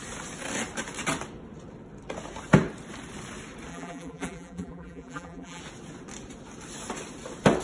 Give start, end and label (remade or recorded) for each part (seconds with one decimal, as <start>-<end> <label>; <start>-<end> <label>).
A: 0.0-3.7 recorded; 3.7-5.6 remade; 5.6-7.6 recorded